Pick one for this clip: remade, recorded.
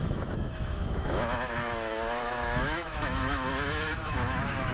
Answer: remade